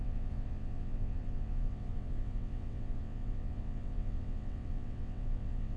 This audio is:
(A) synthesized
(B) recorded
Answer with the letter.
A